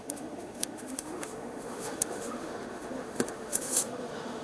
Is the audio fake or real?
fake